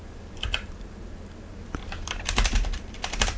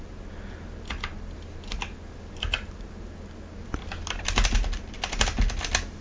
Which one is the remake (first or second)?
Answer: first